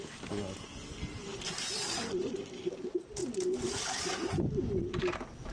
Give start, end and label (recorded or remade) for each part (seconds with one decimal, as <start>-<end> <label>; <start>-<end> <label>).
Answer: 0.0-5.5 recorded